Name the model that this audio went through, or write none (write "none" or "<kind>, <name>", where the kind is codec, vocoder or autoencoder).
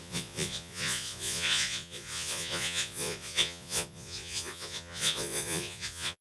vocoder, Vocos